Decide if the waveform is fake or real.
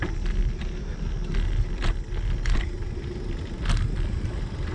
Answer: real